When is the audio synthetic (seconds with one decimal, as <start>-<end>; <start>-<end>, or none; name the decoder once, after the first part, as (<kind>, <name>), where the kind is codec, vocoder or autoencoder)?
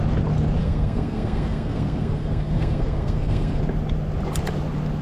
0.6-3.6 (codec, SNAC)